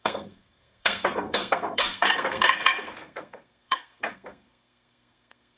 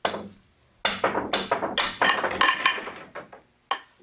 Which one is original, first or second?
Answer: second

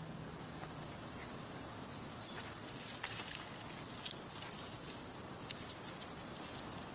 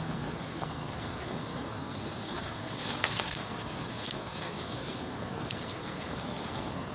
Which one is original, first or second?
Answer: first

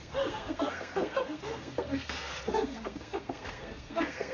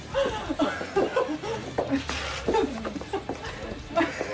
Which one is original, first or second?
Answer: second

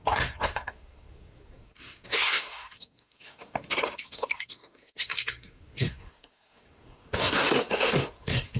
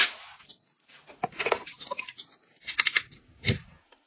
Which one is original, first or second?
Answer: second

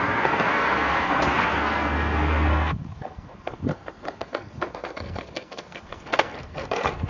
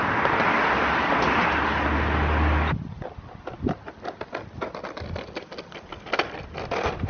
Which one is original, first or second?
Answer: second